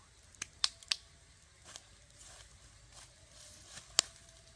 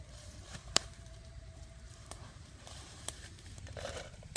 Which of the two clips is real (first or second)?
first